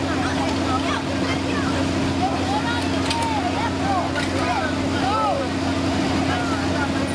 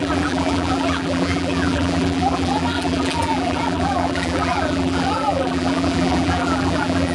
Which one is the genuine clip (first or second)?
first